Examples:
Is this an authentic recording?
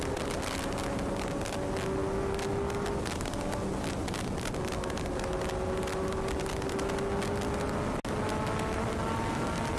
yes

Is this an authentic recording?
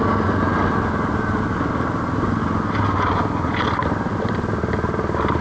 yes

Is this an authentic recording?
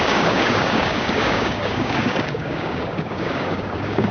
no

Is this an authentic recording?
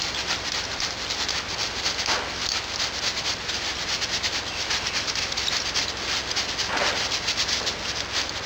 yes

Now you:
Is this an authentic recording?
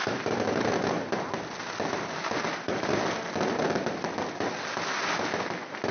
yes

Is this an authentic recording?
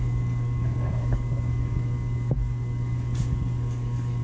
no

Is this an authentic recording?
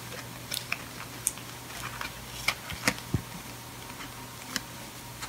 yes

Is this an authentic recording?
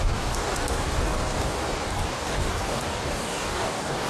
no